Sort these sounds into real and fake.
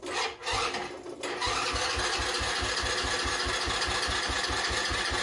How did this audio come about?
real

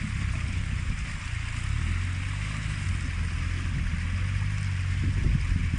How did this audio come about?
real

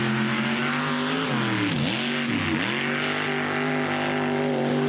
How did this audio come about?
real